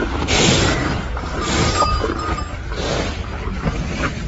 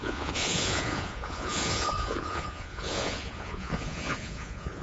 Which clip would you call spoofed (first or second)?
second